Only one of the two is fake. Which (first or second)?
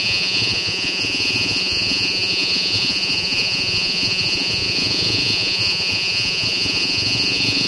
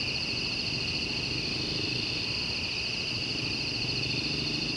first